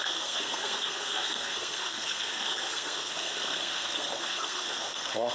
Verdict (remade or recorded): remade